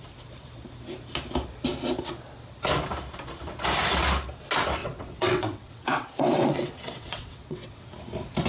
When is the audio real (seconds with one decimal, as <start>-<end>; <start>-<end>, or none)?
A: 0.0-4.8; 7.9-8.5